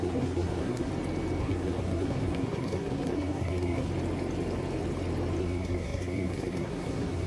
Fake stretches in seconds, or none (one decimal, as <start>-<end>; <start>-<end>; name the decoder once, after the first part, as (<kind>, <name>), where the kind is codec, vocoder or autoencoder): 0.0-0.9 (codec, SNAC); 1.4-3.9; 5.4-7.3